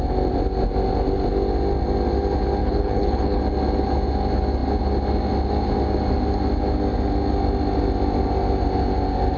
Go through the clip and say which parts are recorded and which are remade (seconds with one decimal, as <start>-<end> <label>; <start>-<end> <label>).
0.0-2.6 recorded; 2.6-3.4 remade; 3.4-9.4 recorded